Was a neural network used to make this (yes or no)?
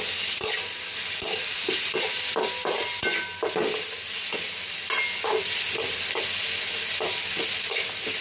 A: no